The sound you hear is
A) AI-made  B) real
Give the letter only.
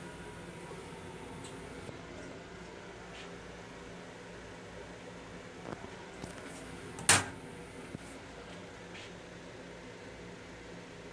B